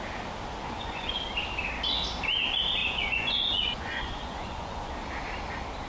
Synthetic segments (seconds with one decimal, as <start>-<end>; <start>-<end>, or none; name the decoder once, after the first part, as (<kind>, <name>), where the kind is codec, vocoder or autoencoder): 0.6-1.2 (vocoder, Vocos); 2.8-4.9